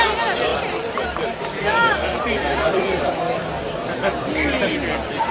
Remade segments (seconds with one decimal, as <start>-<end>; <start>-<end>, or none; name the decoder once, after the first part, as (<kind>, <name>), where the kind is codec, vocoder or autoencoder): 0.5-3.7 (vocoder, BigVGAN v2)